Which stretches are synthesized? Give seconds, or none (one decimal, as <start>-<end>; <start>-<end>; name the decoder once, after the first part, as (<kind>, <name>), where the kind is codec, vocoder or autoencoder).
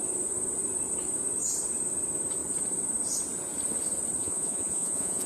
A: 4.2-5.3 (vocoder, Vocos)